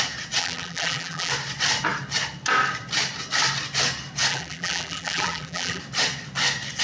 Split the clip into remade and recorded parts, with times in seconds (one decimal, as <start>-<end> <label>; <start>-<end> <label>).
0.0-0.4 recorded; 0.4-1.3 remade; 1.3-4.3 recorded; 4.3-5.8 remade; 5.8-6.8 recorded